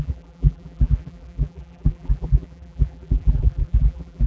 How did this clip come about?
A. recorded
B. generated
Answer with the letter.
B